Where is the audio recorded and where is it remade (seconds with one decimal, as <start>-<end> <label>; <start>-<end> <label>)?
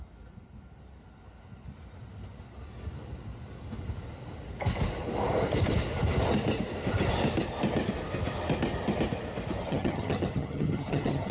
0.0-9.7 recorded; 9.7-11.3 remade